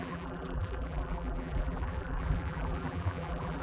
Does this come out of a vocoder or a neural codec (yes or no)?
yes